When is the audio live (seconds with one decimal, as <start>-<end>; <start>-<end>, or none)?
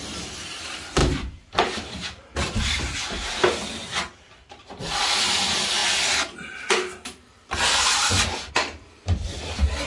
5.8-8.5